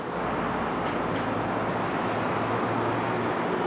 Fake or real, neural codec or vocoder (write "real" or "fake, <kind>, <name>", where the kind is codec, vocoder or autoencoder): real